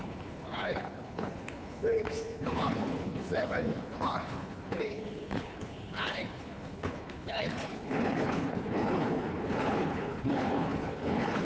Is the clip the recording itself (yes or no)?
no